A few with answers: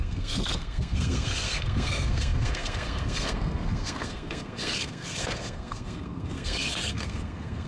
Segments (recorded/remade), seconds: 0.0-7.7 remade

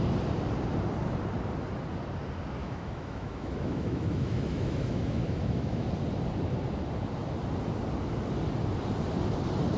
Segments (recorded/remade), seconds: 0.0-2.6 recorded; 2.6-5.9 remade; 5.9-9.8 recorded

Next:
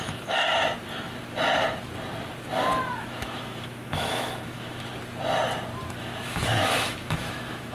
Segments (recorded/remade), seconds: 0.0-0.5 remade; 0.5-3.0 recorded; 3.0-4.9 remade; 4.9-6.0 recorded; 6.0-7.7 remade